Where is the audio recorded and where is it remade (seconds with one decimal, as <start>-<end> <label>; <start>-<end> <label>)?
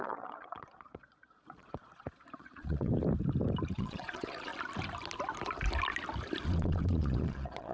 0.0-2.9 remade; 2.9-3.7 recorded; 3.7-4.5 remade; 4.5-6.4 recorded; 6.4-7.7 remade